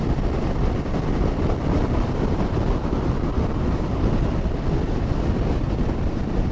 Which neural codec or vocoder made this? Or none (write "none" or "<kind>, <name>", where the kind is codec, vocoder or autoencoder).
vocoder, BigVGAN v2